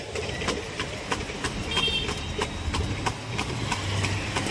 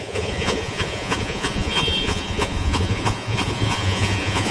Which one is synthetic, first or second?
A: second